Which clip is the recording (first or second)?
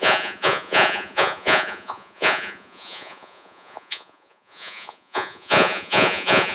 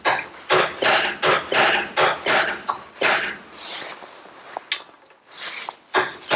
second